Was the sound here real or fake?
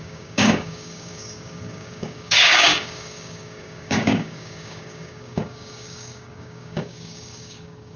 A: fake